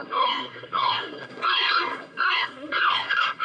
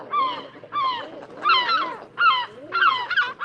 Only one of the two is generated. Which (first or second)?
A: first